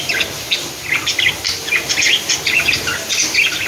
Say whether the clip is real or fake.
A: real